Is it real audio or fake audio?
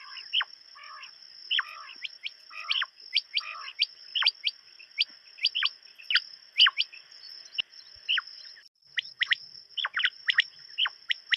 real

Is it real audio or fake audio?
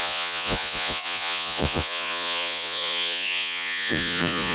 fake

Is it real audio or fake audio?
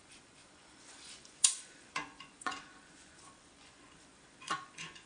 fake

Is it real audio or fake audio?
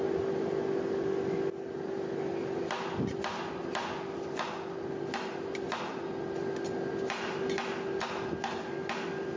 real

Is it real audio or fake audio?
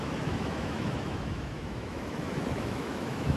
fake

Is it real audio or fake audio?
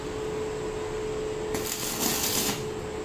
real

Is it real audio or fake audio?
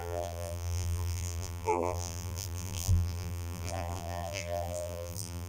fake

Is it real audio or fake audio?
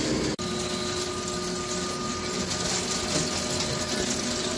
real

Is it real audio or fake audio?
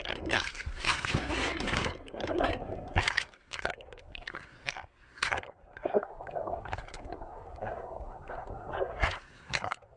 fake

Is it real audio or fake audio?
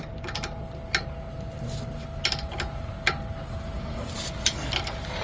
real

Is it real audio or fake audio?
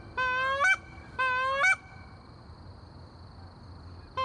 real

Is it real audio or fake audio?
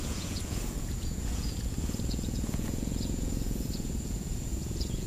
fake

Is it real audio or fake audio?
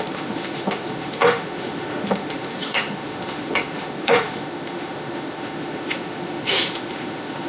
fake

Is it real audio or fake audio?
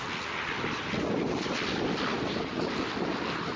real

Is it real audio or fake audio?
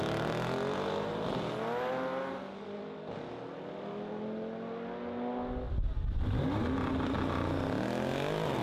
real